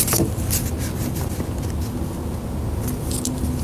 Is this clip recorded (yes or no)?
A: yes